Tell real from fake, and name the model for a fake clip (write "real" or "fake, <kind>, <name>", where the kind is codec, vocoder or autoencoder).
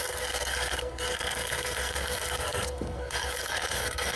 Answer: fake, codec, SNAC